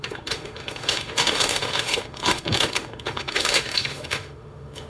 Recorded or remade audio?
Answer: remade